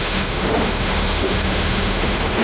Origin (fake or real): fake